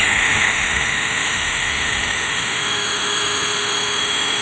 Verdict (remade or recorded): remade